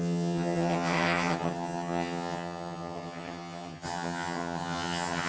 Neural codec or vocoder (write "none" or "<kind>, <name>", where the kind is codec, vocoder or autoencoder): vocoder, HiFi-GAN